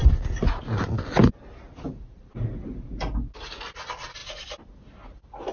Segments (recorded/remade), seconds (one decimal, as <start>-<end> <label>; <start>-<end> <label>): 0.0-5.5 recorded